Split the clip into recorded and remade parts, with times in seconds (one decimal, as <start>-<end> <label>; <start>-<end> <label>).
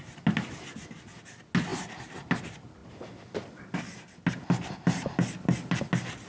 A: 0.0-6.3 recorded